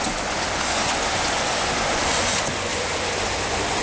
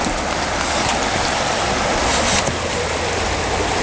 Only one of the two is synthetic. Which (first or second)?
first